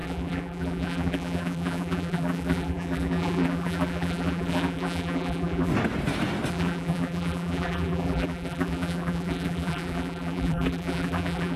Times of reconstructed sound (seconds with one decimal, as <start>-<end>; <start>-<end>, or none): 0.0-5.7; 6.5-11.6